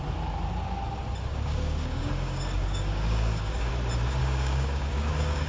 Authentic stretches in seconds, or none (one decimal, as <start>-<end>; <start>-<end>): 0.0-1.3; 3.7-4.2